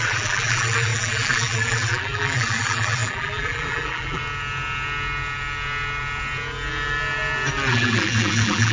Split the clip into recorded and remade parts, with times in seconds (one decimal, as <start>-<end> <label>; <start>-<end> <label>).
0.0-4.2 remade; 4.2-7.7 recorded; 7.7-8.7 remade